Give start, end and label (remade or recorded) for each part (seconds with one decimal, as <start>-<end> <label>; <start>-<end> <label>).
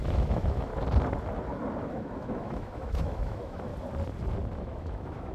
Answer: 0.0-0.7 remade; 0.7-1.8 recorded; 1.8-3.7 remade; 3.7-4.6 recorded; 4.6-5.3 remade